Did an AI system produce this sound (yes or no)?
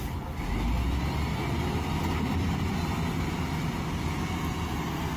no